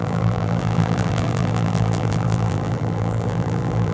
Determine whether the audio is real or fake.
fake